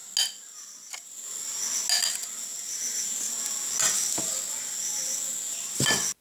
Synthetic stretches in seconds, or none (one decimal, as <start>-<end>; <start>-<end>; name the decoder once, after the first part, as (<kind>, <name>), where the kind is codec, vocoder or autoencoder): none